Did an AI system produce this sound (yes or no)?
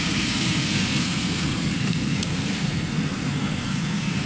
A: yes